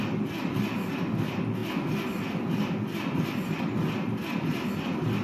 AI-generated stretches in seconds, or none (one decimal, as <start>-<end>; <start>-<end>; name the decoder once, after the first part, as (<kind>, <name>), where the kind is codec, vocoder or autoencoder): none